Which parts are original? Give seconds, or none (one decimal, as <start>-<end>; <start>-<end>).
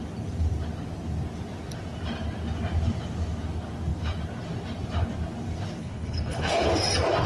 0.0-5.8; 6.7-7.3